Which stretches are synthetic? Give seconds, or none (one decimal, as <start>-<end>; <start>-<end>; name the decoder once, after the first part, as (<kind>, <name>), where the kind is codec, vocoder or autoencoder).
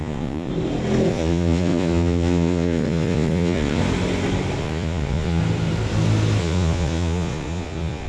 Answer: 0.0-0.5 (vocoder, Vocos); 1.1-3.8; 4.6-5.4; 6.4-8.1